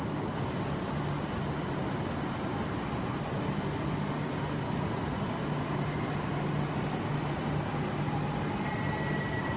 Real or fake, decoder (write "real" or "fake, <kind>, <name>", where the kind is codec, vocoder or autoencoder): real